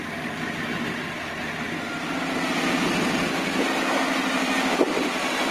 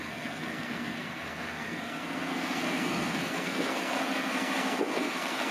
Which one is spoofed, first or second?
second